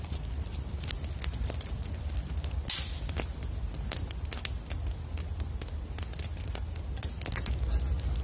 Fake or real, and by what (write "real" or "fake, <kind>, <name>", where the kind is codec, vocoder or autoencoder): real